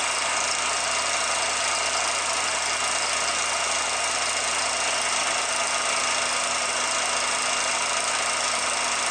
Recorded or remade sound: recorded